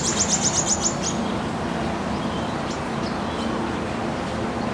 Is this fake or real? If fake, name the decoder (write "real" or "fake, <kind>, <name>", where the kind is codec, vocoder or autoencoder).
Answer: real